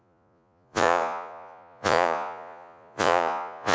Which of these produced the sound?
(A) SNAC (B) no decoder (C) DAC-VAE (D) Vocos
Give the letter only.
D